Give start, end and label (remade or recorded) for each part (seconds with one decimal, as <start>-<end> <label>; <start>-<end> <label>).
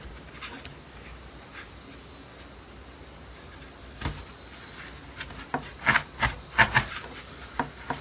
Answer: 0.0-8.0 recorded